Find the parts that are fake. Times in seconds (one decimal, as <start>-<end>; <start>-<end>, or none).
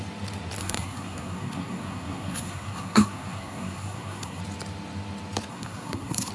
0.6-4.4; 5.5-6.3